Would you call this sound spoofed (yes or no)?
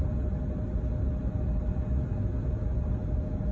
no